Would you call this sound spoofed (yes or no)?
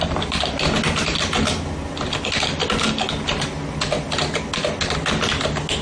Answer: no